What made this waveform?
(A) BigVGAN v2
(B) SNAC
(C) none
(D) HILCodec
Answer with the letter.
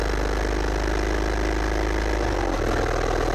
C